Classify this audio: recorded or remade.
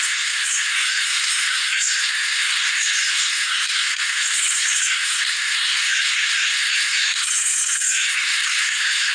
remade